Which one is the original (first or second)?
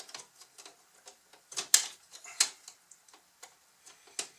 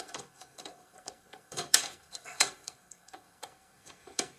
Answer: first